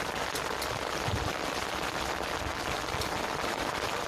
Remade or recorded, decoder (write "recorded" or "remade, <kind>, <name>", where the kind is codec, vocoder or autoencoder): recorded